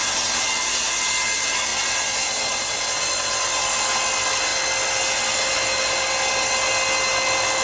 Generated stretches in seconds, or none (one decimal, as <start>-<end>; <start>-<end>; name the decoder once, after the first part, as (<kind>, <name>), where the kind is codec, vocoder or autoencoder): 0.0-0.7 (vocoder, BigVGAN v2); 1.7-2.8